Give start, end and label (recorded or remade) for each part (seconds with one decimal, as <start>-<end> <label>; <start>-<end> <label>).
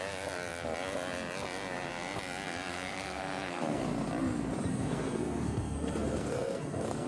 0.0-2.7 recorded; 2.7-3.8 remade; 3.8-4.7 recorded; 4.7-7.1 remade